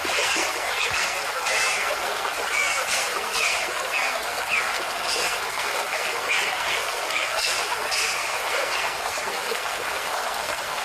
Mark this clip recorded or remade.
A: remade